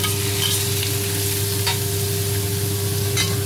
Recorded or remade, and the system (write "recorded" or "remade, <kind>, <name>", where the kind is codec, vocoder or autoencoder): recorded